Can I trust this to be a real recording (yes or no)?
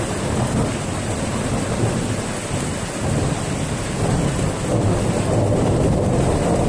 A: yes